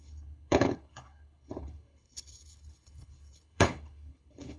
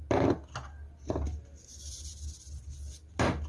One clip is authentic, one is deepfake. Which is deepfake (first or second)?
first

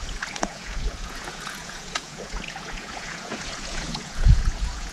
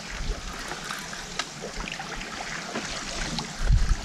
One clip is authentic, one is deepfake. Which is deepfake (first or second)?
first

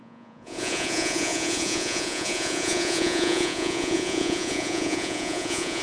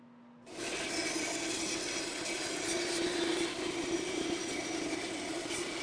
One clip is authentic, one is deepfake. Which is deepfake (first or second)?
first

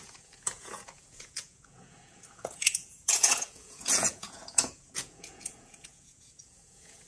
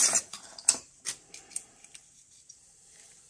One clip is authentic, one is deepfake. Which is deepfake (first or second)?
first